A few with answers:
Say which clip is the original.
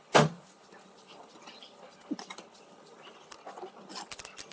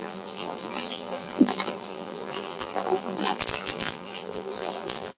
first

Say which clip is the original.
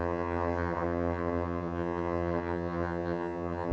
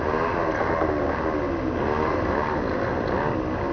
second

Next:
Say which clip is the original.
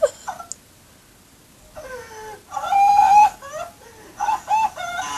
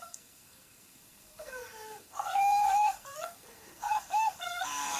first